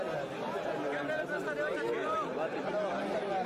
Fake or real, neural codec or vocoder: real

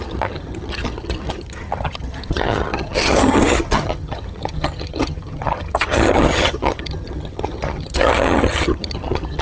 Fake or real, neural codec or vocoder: fake, vocoder, HiFi-GAN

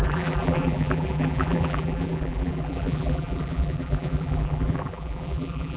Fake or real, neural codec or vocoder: fake, vocoder, BigVGAN v2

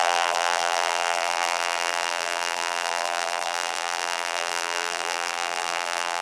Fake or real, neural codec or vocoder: fake, vocoder, BigVGAN v2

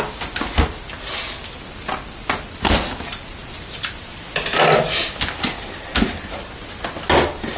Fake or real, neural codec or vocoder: real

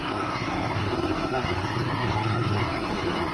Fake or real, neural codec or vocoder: fake, codec, SNAC